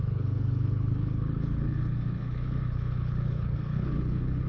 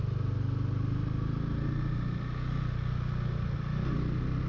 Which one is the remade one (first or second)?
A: first